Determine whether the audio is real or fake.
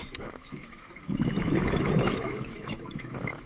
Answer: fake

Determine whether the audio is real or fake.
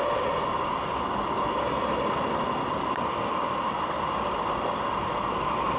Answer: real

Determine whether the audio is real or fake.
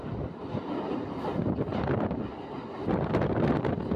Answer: real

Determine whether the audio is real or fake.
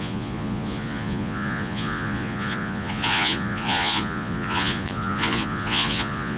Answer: fake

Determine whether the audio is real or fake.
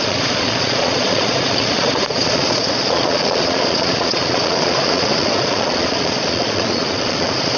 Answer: fake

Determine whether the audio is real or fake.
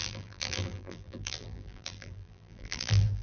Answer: fake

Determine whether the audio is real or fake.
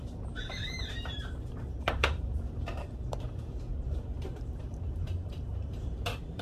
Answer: fake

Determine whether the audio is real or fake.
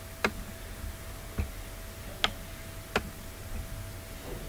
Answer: real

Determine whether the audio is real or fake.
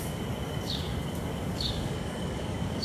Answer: fake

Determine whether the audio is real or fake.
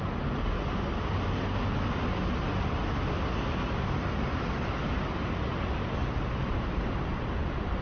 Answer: real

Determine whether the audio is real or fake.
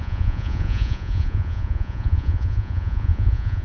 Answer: fake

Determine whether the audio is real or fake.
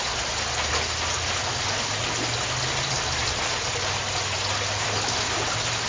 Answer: real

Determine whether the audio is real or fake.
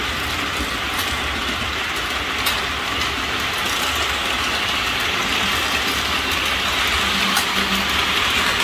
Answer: real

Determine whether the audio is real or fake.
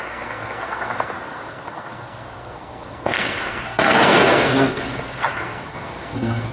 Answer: fake